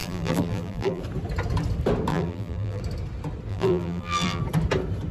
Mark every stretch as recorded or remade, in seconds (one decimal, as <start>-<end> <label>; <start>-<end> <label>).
0.0-1.0 remade; 1.0-2.1 recorded; 2.1-2.8 remade; 2.8-3.5 recorded; 3.5-4.4 remade; 4.4-5.1 recorded